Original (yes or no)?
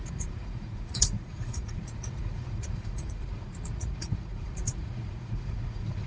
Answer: no